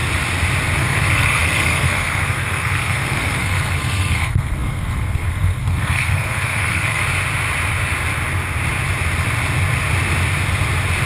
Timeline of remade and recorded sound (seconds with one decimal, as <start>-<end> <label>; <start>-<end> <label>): 0.0-0.8 recorded; 0.8-7.0 remade; 7.0-11.1 recorded